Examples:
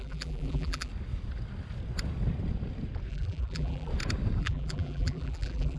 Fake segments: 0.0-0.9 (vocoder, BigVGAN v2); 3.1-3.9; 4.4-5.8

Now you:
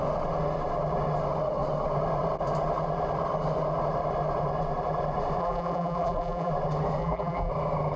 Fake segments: 5.4-6.5 (vocoder, BigVGAN v2); 7.0-7.5

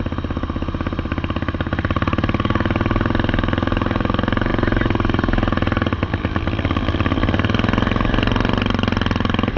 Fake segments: none

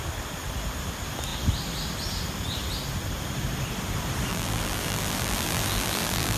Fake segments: 4.3-6.4 (vocoder, BigVGAN v2)

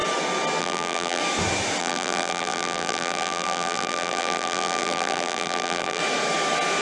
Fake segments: 0.6-1.2 (vocoder, BigVGAN v2); 1.8-6.0

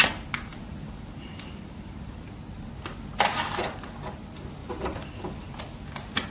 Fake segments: 0.5-2.3 (vocoder, BigVGAN v2); 4.6-5.6